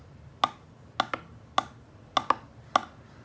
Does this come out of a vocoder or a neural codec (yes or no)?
no